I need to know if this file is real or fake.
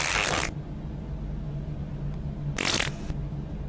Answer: real